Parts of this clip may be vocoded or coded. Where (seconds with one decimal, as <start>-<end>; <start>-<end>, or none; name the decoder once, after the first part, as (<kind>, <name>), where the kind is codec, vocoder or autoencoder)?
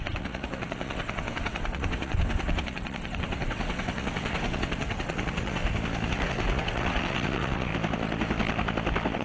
0.0-5.6 (vocoder, WaveNeXt); 6.1-7.7